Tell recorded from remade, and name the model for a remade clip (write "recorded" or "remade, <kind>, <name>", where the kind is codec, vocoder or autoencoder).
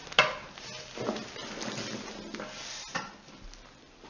recorded